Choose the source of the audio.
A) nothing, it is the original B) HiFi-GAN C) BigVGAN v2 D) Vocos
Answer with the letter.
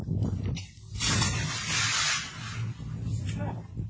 A